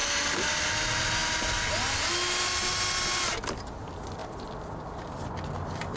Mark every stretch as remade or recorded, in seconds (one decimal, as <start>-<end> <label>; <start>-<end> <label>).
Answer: 0.0-6.0 recorded